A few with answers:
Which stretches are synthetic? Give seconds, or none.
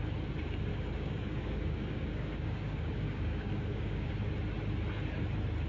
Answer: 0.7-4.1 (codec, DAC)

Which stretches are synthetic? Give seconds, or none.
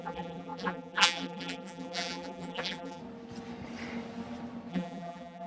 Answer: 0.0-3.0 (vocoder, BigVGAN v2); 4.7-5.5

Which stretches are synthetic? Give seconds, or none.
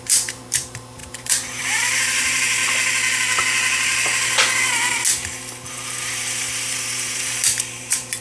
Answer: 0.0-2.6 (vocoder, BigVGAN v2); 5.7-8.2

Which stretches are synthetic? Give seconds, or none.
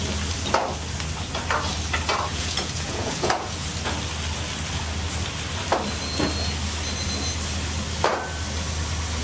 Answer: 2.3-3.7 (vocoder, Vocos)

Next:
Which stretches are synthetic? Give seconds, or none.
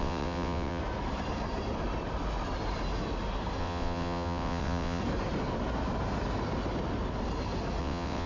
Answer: 0.0-0.8 (vocoder, WaveNeXt); 3.6-5.0; 7.8-8.3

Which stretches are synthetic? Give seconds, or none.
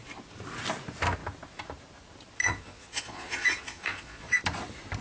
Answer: 2.4-4.4 (vocoder, Vocos)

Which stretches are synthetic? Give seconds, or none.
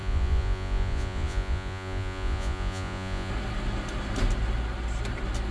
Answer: 0.0-3.3 (vocoder, Vocos)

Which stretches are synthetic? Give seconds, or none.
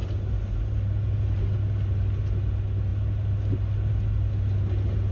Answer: none